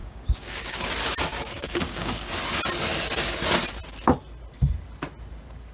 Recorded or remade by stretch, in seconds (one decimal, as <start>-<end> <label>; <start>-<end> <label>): 0.0-0.9 remade; 0.9-1.3 recorded; 1.3-2.3 remade; 2.3-5.7 recorded